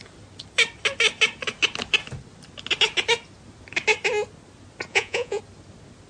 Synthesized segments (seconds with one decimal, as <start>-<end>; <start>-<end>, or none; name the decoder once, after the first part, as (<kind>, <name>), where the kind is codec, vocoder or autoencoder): 4.9-5.4 (vocoder, Vocos)